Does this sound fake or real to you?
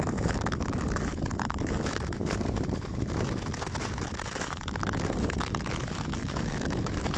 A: fake